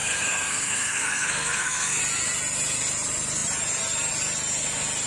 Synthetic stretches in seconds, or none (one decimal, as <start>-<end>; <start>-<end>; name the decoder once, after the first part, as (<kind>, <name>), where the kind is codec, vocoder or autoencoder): 0.0-2.0 (codec, SNAC)